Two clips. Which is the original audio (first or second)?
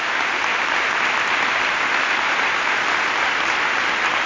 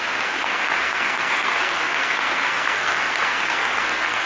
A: first